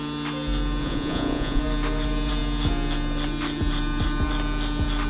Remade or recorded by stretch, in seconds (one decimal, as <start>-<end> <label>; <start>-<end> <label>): 0.0-0.8 recorded; 0.8-1.6 remade; 1.6-5.1 recorded